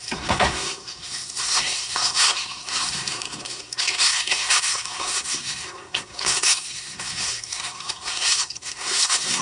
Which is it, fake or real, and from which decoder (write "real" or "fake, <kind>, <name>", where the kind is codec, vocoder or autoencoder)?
fake, codec, SNAC